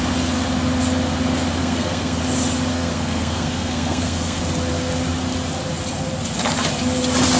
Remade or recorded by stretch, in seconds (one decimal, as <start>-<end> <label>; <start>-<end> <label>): 0.0-1.6 recorded; 1.6-2.2 remade; 2.2-2.7 recorded; 2.7-4.4 remade; 4.4-7.4 recorded